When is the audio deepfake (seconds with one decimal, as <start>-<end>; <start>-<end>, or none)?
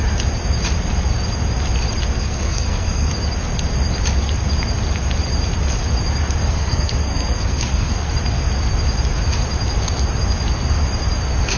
2.2-3.1; 6.4-8.1